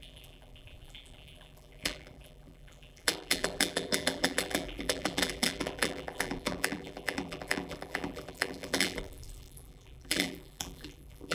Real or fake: fake